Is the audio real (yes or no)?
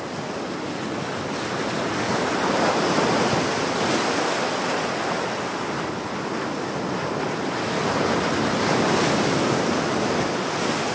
yes